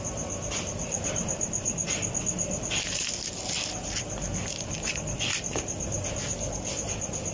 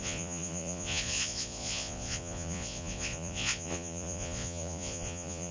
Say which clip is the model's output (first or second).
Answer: second